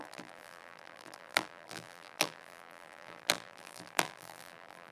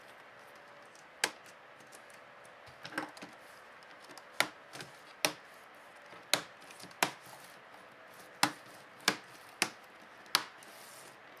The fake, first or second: first